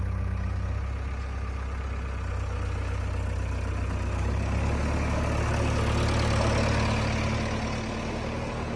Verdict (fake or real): real